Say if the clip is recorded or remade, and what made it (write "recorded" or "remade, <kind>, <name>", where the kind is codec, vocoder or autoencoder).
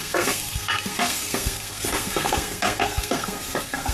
remade, codec, SNAC